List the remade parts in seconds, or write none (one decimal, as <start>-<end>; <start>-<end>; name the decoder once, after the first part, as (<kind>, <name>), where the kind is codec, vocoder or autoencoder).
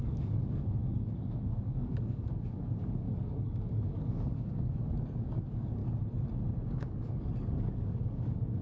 0.0-5.8 (codec, DAC); 6.7-8.6